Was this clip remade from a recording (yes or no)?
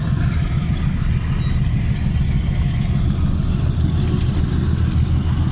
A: no